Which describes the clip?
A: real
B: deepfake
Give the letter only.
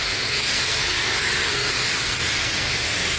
B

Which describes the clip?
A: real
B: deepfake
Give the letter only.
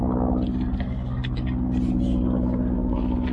A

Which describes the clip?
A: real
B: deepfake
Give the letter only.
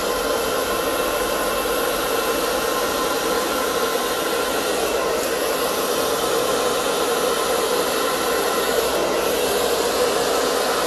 A